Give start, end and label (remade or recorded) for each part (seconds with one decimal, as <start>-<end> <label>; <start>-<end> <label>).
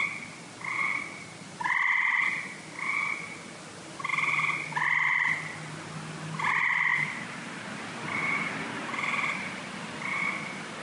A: 0.0-6.9 recorded; 6.9-7.7 remade; 7.7-10.8 recorded